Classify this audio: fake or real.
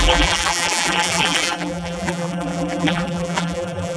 fake